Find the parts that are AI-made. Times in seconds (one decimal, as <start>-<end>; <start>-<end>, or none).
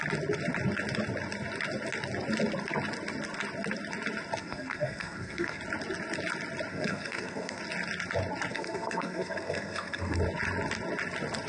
4.4-5.6; 6.7-7.6; 8.5-10.2